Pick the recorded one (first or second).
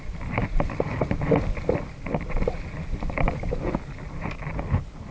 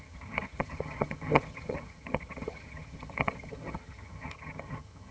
first